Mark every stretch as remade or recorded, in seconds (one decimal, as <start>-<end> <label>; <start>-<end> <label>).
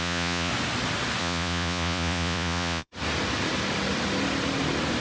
0.0-0.5 remade; 0.5-1.2 recorded; 1.2-2.9 remade; 2.9-5.0 recorded